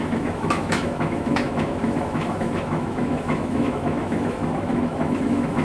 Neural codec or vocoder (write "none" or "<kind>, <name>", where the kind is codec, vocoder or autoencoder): autoencoder, DAC-VAE